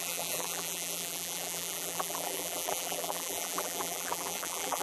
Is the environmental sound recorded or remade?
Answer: remade